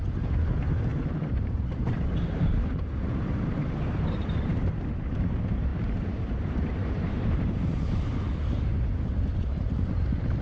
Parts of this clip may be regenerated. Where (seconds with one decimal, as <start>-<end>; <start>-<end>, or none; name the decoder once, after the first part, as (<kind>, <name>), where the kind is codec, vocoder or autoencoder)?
0.0-5.7 (vocoder, BigVGAN v2); 6.3-10.4